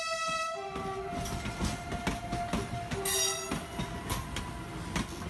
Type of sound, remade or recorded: recorded